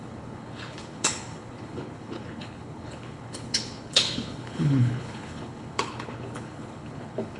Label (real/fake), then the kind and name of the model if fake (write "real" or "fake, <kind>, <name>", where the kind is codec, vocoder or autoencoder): fake, codec, HILCodec